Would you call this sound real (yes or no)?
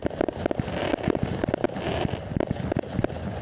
yes